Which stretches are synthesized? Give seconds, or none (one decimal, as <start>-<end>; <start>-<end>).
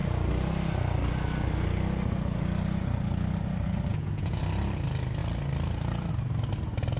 3.9-4.4